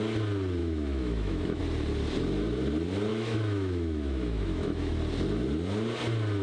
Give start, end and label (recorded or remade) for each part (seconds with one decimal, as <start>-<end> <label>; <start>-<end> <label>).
0.0-0.6 recorded; 0.6-1.6 remade; 1.6-3.1 recorded; 3.1-4.9 remade; 4.9-6.4 recorded